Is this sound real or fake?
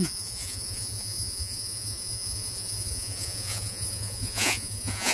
fake